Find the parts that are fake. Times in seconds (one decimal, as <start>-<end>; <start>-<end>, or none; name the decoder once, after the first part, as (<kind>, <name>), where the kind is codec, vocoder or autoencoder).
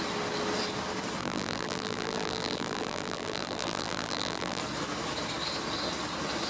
1.2-4.6 (vocoder, BigVGAN v2)